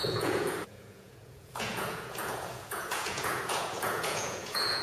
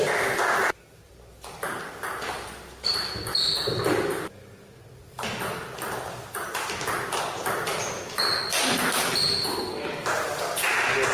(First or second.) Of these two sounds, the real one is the second